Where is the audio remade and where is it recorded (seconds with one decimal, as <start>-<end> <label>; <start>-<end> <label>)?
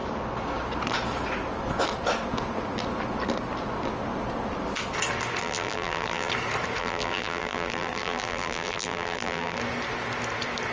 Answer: 0.0-5.4 recorded; 5.4-6.3 remade; 6.3-6.8 recorded; 6.8-9.6 remade; 9.6-10.7 recorded